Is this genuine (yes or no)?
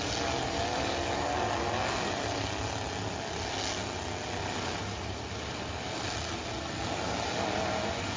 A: yes